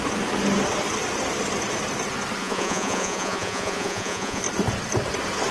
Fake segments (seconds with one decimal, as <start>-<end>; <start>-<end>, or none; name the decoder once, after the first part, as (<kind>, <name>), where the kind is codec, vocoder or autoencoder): 2.4-4.4 (vocoder, Vocos)